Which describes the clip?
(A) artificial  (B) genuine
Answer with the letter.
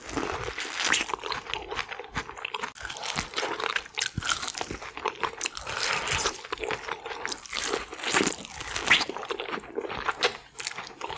B